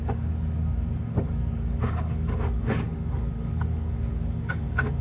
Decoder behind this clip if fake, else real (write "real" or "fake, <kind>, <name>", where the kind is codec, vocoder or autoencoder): fake, codec, DAC